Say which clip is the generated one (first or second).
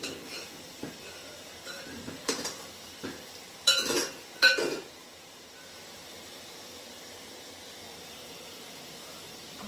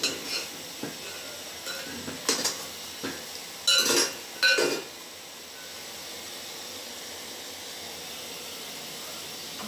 first